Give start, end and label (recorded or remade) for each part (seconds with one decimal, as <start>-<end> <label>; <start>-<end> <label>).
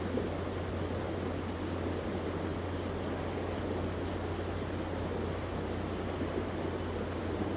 0.0-7.6 recorded